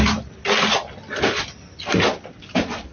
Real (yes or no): yes